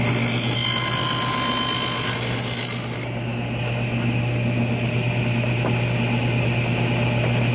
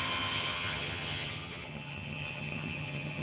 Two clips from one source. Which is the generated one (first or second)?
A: second